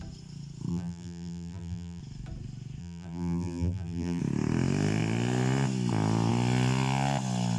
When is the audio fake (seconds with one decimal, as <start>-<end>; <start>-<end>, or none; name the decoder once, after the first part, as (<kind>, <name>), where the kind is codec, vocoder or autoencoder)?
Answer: 0.7-2.0 (vocoder, BigVGAN v2); 2.8-4.2